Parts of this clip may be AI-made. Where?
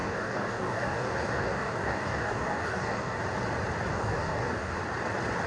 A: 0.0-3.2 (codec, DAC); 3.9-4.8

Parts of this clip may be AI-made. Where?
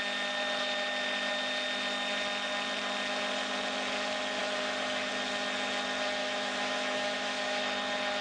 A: 4.4-5.1 (autoencoder, DAC-VAE); 6.2-7.6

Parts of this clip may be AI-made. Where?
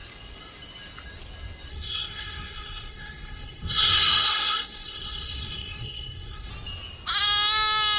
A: 1.7-6.5 (codec, SNAC)